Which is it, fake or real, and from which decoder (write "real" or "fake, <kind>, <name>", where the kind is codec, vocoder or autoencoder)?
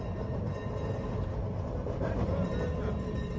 real